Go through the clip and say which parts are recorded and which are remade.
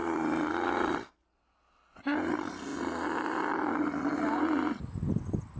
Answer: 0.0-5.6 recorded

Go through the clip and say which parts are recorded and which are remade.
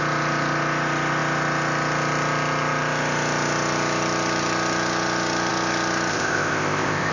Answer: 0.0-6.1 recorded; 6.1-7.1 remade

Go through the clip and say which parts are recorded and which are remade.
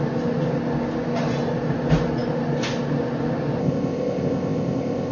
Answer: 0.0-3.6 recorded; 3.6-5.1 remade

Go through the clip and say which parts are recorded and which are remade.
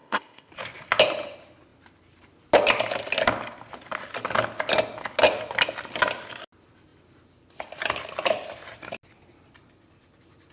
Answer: 0.0-0.5 remade; 0.5-10.5 recorded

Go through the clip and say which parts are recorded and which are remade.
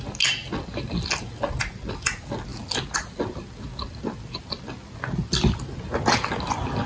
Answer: 0.0-6.9 recorded